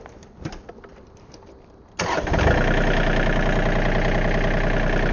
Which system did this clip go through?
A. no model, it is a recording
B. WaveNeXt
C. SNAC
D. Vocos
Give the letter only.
A